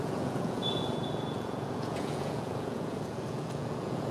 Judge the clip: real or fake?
fake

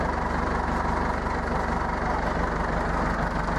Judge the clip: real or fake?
real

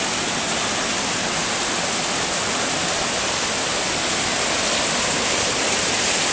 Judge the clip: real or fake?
real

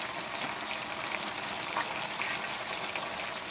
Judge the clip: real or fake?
real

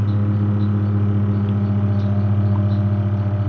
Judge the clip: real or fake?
real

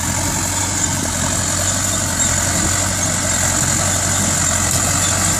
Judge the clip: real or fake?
real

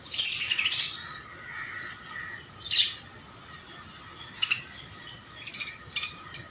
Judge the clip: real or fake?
real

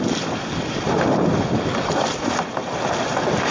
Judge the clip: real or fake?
real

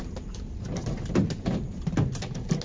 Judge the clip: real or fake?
real